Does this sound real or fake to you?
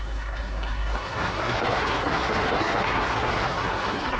fake